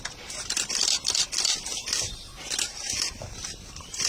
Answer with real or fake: fake